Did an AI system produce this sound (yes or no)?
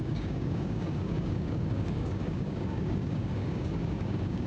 yes